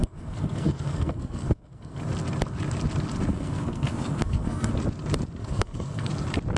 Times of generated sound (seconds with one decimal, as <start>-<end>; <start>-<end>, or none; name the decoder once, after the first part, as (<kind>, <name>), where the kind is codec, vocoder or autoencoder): 0.0-2.0 (codec, SNAC); 3.3-4.7; 5.4-6.1